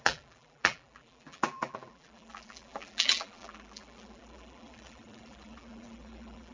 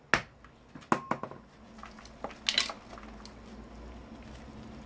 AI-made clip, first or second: first